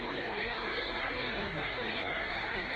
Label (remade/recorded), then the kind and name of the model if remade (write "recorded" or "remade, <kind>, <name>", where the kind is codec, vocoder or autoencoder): remade, codec, SNAC